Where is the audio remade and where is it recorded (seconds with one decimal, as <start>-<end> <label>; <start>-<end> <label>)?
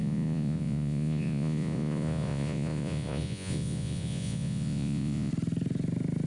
0.0-5.3 remade; 5.3-6.3 recorded